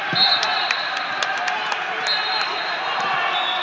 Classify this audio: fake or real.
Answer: real